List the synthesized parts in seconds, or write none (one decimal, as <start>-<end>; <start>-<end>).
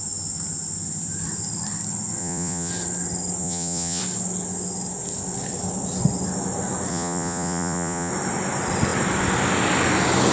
2.2-2.7; 3.4-4.0; 6.9-8.1